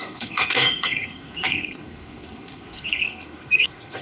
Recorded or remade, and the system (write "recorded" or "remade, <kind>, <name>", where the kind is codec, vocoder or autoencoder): remade, codec, SNAC